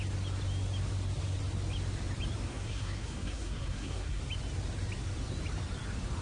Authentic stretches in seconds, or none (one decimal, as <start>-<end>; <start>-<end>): 0.0-2.5; 4.2-6.2

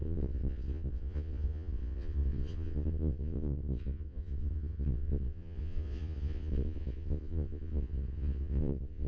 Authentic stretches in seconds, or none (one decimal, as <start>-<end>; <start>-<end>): none

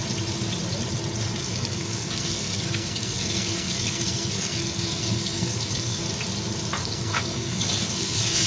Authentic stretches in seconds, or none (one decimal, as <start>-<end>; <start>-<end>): 0.0-1.4; 6.0-6.8